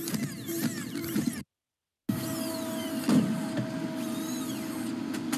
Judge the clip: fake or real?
real